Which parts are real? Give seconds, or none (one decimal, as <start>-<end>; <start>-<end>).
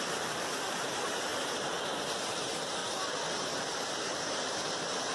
2.8-3.6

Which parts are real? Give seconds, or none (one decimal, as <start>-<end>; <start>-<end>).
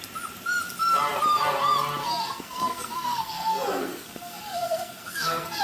0.0-2.0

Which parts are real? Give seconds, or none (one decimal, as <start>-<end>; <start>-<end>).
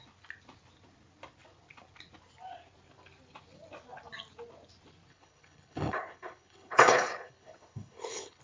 0.0-5.1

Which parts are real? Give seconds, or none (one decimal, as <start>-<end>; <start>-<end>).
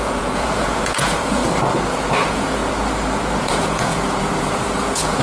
1.4-1.9; 2.6-3.4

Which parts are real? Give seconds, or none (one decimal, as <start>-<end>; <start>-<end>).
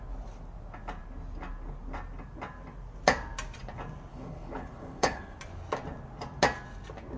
0.0-4.1; 5.4-7.2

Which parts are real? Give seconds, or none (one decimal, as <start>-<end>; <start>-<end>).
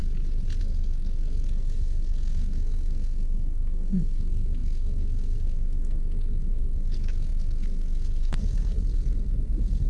0.0-0.6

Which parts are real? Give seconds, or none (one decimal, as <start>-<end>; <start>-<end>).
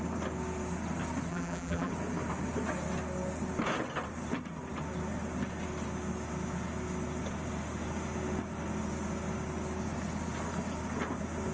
0.0-1.3; 1.9-11.5